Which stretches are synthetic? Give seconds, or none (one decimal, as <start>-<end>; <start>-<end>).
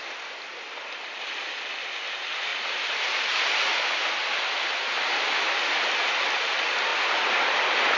none